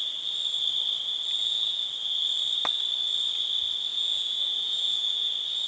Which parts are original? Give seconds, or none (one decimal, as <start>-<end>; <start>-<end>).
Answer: 0.0-1.4; 1.9-3.9; 5.3-5.7